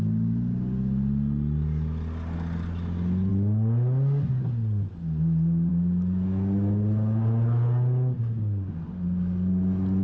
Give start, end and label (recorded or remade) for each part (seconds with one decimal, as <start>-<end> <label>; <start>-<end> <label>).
0.0-10.0 recorded